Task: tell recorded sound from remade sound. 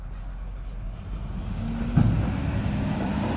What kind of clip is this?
recorded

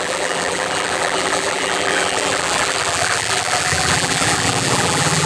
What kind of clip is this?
remade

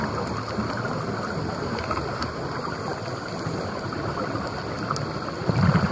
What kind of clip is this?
recorded